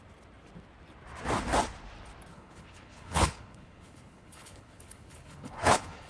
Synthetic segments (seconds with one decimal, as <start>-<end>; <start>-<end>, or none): 2.3-6.1